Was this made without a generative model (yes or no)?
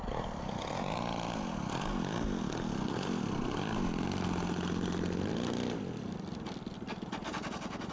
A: yes